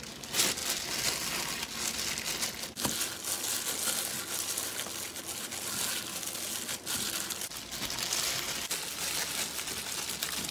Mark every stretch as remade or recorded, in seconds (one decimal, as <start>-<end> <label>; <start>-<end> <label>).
0.0-10.5 recorded

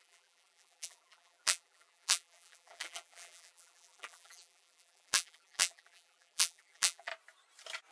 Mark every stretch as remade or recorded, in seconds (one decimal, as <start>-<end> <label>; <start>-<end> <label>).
0.0-7.1 remade; 7.1-7.9 recorded

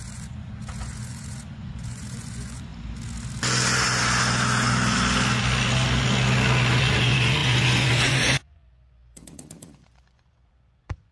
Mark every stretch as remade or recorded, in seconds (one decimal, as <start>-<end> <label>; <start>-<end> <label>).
0.0-2.7 remade; 2.7-6.7 recorded; 6.7-11.1 remade

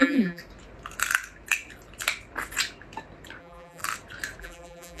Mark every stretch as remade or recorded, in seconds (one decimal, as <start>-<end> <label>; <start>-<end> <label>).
0.0-0.4 remade; 0.4-3.4 recorded; 3.4-3.8 remade; 3.8-4.4 recorded; 4.4-5.0 remade

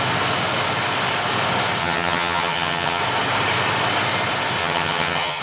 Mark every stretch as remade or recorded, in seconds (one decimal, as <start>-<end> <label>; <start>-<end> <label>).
0.0-1.8 recorded; 1.8-3.0 remade; 3.0-4.6 recorded; 4.6-5.4 remade

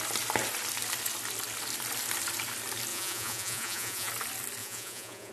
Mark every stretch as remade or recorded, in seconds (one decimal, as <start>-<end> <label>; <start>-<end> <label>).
0.0-2.9 recorded; 2.9-4.1 remade; 4.1-4.6 recorded; 4.6-5.3 remade

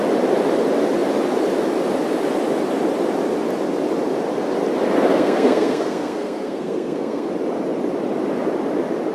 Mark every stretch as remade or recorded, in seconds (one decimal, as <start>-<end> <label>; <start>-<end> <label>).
0.0-5.1 recorded; 5.1-7.3 remade; 7.3-9.1 recorded

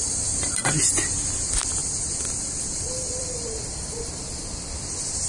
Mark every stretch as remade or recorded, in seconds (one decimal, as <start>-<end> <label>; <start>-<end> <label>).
0.0-0.9 remade; 0.9-1.8 recorded; 1.8-4.1 remade; 4.1-5.3 recorded